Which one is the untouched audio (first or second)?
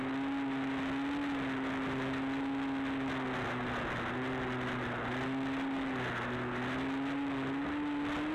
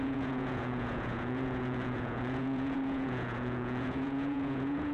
first